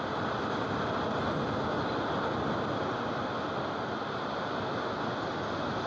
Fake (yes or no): no